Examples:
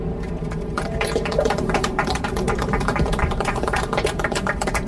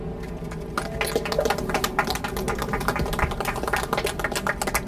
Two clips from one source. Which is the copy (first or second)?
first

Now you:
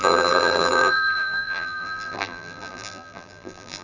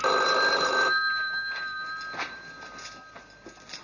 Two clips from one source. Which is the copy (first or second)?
first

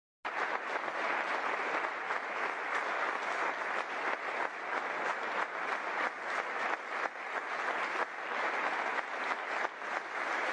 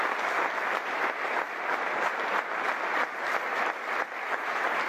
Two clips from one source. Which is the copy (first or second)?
second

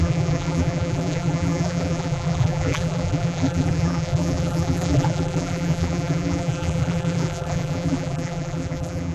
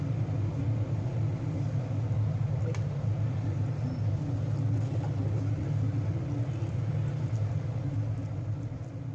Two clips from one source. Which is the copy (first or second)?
first